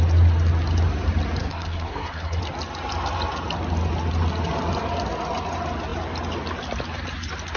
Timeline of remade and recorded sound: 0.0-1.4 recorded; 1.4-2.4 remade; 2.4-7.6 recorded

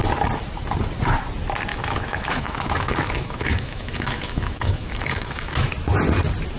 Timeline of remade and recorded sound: 0.0-1.7 recorded; 1.7-5.7 remade; 5.7-6.6 recorded

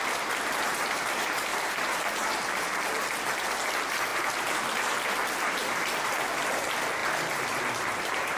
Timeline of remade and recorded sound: 0.0-1.5 recorded; 1.5-2.3 remade; 2.3-8.4 recorded

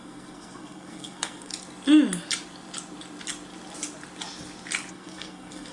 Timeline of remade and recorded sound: 0.0-1.5 remade; 1.5-4.9 recorded; 4.9-5.7 remade

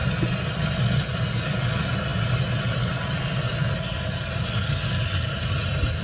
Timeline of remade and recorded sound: 0.0-6.0 recorded